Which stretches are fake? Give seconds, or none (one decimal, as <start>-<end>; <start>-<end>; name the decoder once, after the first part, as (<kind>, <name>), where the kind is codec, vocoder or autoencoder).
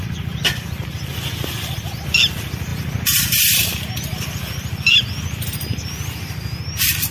none